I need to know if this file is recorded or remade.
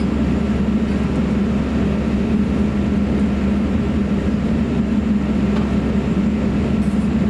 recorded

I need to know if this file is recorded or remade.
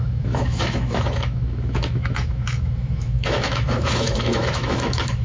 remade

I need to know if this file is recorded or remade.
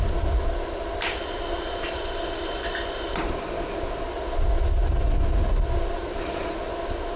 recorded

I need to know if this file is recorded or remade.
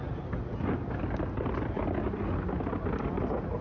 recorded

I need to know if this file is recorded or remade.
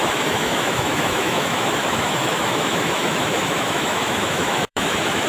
remade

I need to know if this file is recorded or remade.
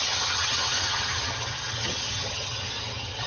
remade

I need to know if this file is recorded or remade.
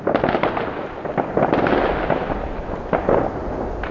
recorded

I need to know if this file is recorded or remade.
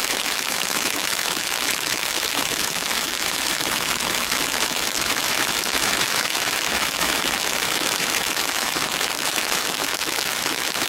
remade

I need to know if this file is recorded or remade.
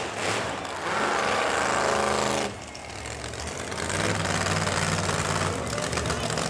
recorded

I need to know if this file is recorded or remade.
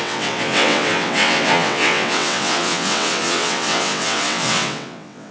remade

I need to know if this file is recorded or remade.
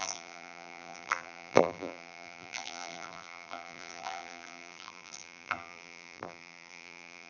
remade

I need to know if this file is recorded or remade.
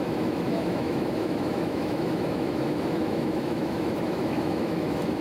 remade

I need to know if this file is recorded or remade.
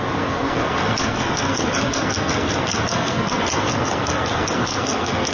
remade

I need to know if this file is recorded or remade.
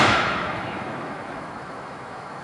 remade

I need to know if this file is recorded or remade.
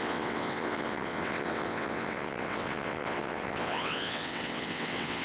remade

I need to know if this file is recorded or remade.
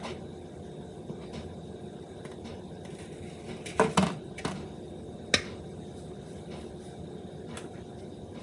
recorded